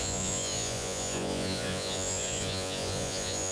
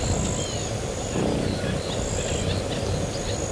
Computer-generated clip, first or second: first